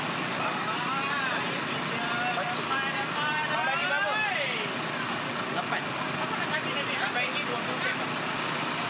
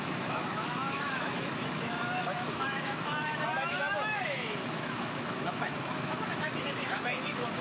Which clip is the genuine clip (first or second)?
first